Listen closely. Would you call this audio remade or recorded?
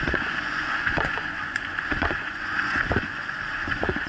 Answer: remade